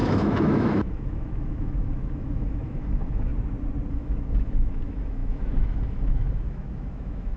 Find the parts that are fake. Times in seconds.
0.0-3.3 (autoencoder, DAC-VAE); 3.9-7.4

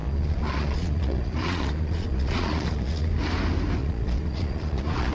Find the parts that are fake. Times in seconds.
0.0-3.1 (vocoder, Vocos); 3.8-5.1

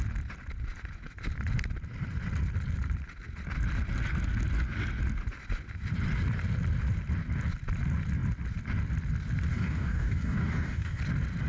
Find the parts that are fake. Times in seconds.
9.5-11.0 (codec, DAC)

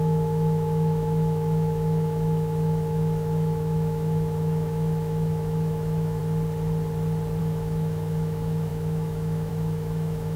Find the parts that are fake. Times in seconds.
0.0-6.2 (autoencoder, DAC-VAE); 7.4-10.4